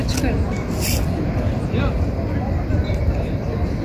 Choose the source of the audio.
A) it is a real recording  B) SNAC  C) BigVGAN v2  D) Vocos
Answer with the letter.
A